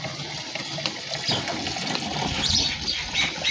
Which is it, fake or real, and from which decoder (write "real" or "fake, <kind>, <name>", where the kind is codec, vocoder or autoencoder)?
real